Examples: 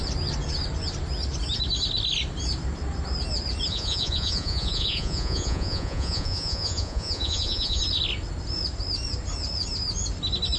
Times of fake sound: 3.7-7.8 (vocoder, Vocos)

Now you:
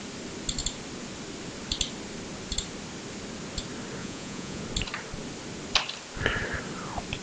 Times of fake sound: 4.0-4.6 (vocoder, Vocos)